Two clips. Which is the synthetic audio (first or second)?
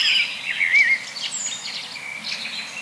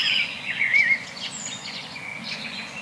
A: second